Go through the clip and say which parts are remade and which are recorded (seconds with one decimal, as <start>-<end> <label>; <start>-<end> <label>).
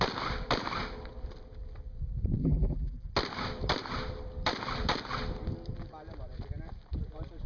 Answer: 0.0-2.4 recorded; 2.4-3.1 remade; 3.1-7.5 recorded